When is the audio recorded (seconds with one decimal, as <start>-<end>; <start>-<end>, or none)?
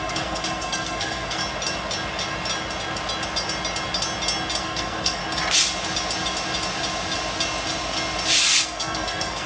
1.4-4.6; 5.2-8.4